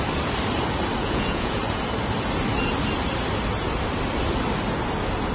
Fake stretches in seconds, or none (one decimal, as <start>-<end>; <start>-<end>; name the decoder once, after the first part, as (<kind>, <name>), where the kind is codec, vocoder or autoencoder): 1.0-1.6 (vocoder, Vocos)

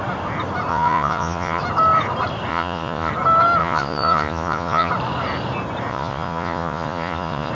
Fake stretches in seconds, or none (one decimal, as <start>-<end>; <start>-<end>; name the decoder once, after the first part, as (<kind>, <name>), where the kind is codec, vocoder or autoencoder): 0.7-1.6 (vocoder, Vocos); 2.5-3.1; 3.6-4.9; 5.9-7.5

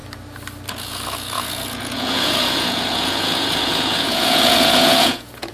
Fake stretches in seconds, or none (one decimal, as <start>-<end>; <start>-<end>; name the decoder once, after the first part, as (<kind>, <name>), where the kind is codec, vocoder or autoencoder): 0.7-5.5 (vocoder, Vocos)

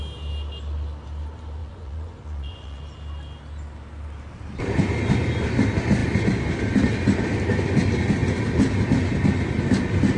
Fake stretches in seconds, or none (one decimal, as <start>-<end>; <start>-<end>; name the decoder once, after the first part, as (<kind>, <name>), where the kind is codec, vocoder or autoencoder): 1.6-2.8 (vocoder, Vocos)